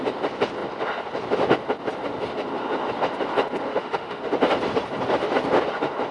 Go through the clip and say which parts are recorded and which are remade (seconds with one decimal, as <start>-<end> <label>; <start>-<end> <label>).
0.0-3.7 recorded; 3.7-4.2 remade; 4.2-6.1 recorded